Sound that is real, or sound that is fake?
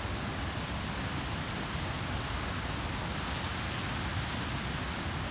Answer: real